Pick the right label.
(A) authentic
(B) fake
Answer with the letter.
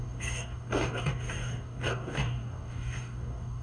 B